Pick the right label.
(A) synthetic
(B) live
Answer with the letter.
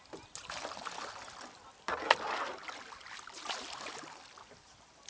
B